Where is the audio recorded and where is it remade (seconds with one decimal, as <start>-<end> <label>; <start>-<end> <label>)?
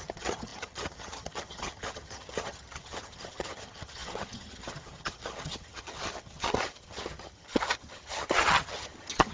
0.0-9.3 remade